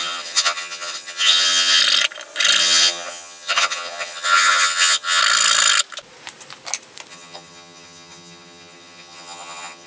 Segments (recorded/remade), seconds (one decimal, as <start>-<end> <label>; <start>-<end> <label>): 0.0-1.8 remade; 1.8-2.6 recorded; 2.6-5.2 remade; 5.2-7.1 recorded; 7.1-9.9 remade